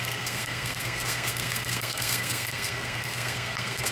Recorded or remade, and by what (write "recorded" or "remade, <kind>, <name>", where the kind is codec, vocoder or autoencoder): remade, codec, SNAC